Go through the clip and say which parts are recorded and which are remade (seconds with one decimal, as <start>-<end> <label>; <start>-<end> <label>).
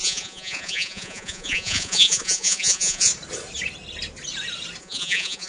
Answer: 0.0-3.1 remade; 3.1-4.8 recorded; 4.8-5.5 remade